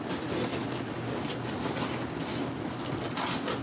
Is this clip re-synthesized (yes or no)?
no